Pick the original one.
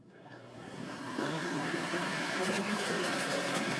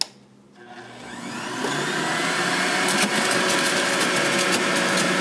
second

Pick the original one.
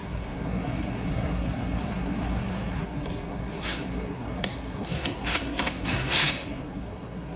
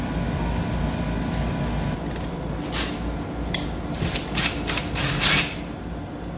second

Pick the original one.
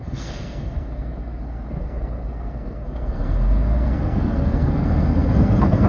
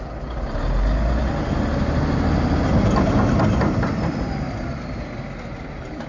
second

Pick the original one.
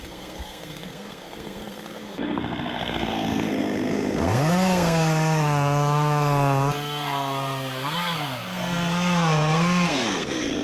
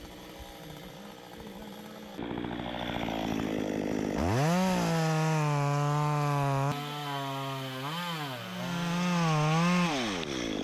second